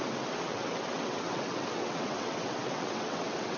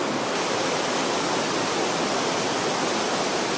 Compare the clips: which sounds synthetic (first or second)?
first